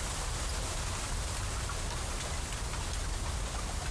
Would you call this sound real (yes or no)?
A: yes